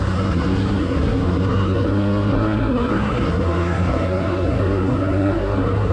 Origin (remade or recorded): remade